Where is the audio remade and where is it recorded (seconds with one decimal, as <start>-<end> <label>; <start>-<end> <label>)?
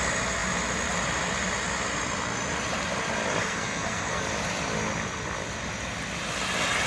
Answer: 0.0-3.4 recorded; 3.4-4.2 remade; 4.2-6.9 recorded